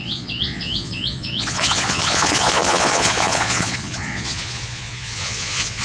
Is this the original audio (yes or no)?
no